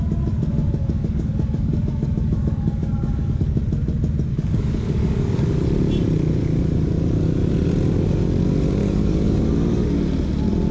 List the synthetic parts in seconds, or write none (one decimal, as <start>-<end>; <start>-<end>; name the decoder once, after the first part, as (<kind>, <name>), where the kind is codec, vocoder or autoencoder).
0.5-3.6 (codec, DAC); 4.3-5.6; 8.8-9.4